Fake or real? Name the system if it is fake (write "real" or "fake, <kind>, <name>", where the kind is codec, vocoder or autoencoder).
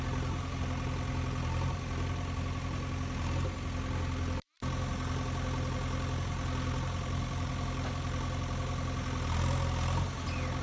real